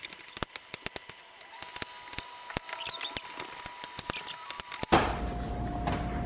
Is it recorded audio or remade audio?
recorded